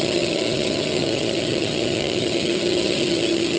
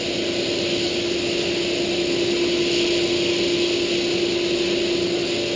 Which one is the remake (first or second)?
first